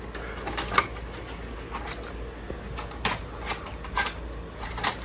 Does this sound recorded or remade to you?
recorded